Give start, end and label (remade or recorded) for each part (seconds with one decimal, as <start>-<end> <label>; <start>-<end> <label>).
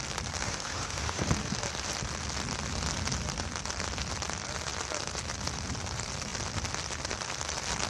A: 0.0-0.4 recorded; 0.4-1.2 remade; 1.2-7.9 recorded